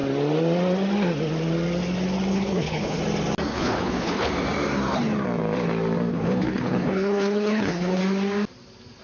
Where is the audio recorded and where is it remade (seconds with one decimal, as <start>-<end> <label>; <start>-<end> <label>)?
0.0-2.3 recorded; 2.3-3.0 remade; 3.0-3.5 recorded; 3.5-4.3 remade; 4.3-6.1 recorded; 6.1-8.0 remade; 8.0-9.0 recorded